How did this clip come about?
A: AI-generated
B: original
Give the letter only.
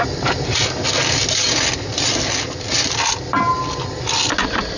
B